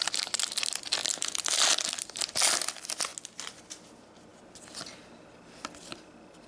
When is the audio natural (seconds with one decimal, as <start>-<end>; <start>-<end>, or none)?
0.0-6.5